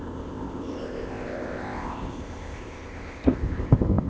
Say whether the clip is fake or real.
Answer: fake